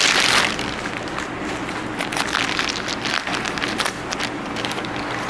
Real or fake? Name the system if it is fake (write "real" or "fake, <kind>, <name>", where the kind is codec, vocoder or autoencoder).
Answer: real